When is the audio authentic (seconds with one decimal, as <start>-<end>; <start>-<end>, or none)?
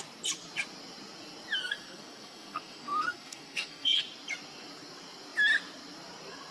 0.0-1.6; 4.0-6.5